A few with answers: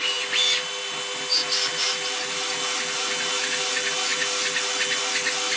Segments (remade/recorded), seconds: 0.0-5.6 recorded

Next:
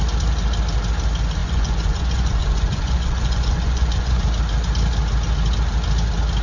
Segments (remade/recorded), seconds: 0.0-1.4 recorded; 1.4-4.2 remade; 4.2-6.4 recorded

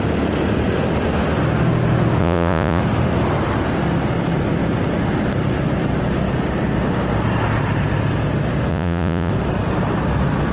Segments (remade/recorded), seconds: 0.0-2.2 recorded; 2.2-2.8 remade; 2.8-8.7 recorded; 8.7-9.3 remade; 9.3-10.5 recorded

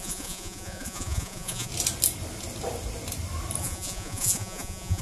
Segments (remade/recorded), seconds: 0.0-1.7 remade; 1.7-3.6 recorded; 3.6-5.0 remade

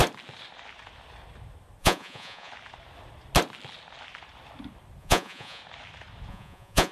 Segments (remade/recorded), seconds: 0.0-1.8 recorded; 1.8-2.5 remade; 2.5-5.0 recorded; 5.0-5.6 remade; 5.6-6.3 recorded; 6.3-6.9 remade

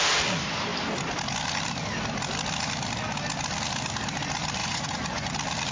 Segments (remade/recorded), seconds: 0.0-4.6 recorded; 4.6-5.3 remade; 5.3-5.7 recorded